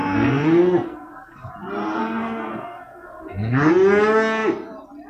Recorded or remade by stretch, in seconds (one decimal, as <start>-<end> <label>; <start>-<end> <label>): 0.0-1.5 remade; 1.5-2.0 recorded; 2.0-3.7 remade; 3.7-5.1 recorded